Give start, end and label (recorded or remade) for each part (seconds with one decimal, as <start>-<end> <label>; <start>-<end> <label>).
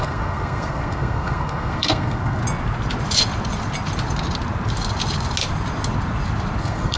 0.0-2.4 remade; 2.4-6.6 recorded; 6.6-7.0 remade